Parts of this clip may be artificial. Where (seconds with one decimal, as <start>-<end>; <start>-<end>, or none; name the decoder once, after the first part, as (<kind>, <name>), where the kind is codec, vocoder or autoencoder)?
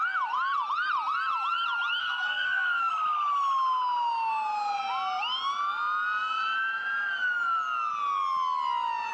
2.0-2.9 (codec, SNAC)